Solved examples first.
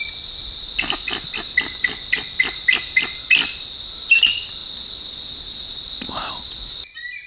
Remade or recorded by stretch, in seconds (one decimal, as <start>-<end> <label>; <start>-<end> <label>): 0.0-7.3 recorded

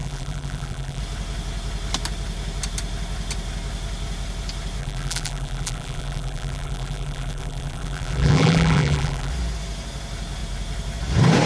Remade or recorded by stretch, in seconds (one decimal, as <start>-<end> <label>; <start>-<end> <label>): 0.0-1.0 remade; 1.0-4.8 recorded; 4.8-9.3 remade; 9.3-11.5 recorded

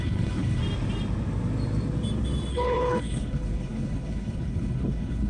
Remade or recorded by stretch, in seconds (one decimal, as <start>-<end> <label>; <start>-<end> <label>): 0.0-0.6 remade; 0.6-2.5 recorded; 2.5-5.3 remade

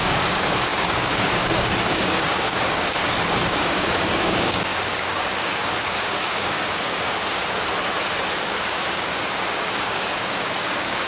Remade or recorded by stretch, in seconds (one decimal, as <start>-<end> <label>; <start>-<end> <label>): 0.0-3.0 remade; 3.0-3.5 recorded; 3.5-7.4 remade; 7.4-8.4 recorded; 8.4-11.1 remade

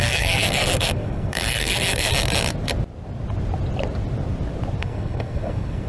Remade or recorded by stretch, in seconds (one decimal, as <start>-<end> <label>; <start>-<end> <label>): 0.0-2.1 remade; 2.1-4.8 recorded; 4.8-5.9 remade

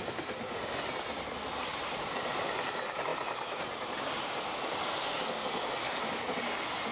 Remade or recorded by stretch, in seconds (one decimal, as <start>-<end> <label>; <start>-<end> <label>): 0.0-6.9 recorded

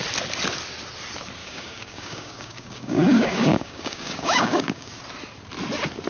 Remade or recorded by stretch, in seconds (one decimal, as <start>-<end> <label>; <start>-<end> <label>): 0.0-1.4 recorded; 1.4-5.0 remade; 5.0-6.1 recorded

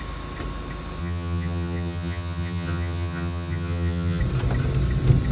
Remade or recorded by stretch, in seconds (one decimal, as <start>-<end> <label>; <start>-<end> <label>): 0.0-1.0 recorded; 1.0-4.2 remade; 4.2-5.3 recorded